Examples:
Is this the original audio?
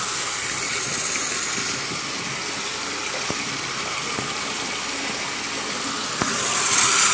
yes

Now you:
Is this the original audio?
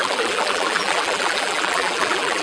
no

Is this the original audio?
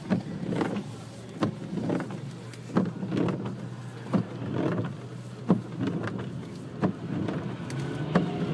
yes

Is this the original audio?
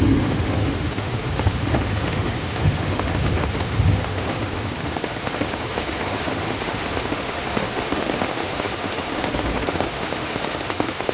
no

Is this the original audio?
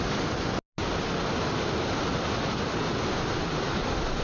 yes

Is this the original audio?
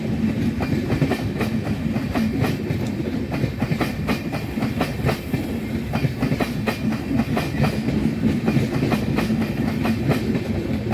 yes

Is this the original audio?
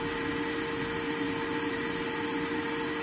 yes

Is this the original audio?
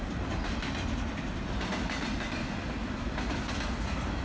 yes